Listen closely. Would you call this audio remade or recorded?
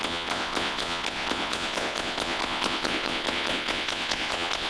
remade